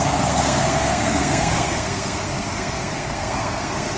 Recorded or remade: remade